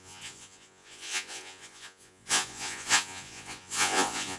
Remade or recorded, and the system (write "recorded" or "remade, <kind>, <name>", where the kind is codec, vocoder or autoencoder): remade, vocoder, Vocos